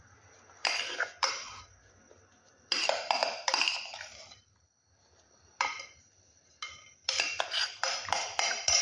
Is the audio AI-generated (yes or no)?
yes